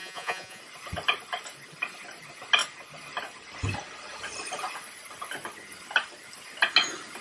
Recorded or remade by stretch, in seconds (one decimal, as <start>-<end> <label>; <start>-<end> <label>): 0.0-0.6 remade; 0.6-7.2 recorded